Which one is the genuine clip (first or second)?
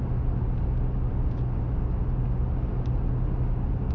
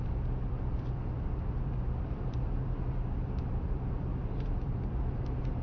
first